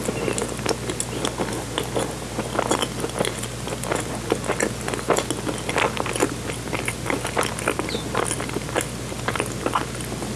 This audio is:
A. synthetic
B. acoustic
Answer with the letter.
B